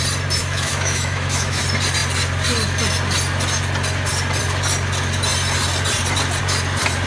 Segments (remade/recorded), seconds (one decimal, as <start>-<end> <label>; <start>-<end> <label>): 0.0-0.4 recorded; 0.4-1.6 remade; 1.6-7.1 recorded